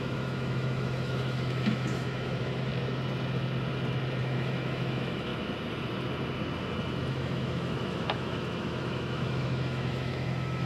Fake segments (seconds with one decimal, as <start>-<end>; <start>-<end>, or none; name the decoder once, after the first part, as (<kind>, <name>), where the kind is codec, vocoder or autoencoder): 0.0-2.7 (autoencoder, DAC-VAE); 4.2-5.3; 7.1-10.7

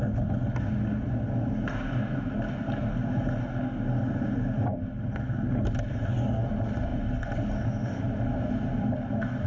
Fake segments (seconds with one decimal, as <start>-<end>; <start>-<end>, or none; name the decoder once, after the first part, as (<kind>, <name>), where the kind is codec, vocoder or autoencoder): none

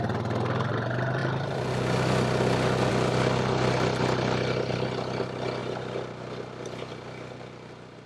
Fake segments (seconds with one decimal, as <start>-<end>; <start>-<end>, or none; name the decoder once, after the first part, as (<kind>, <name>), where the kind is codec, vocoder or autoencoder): none

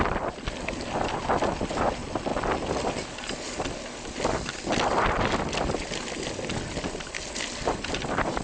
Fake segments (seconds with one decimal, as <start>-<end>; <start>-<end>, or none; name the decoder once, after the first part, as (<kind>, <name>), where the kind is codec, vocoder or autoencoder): none